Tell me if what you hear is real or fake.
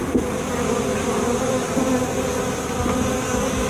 real